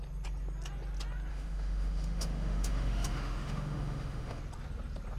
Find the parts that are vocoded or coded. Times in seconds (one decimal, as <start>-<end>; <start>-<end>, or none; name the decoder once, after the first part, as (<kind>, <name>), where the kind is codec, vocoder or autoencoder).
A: 1.3-4.4 (autoencoder, DAC-VAE)